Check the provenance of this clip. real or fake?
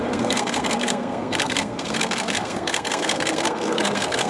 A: fake